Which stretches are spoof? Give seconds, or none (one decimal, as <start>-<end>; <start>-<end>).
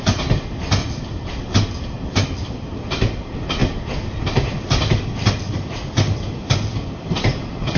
0.8-1.3; 3.6-4.5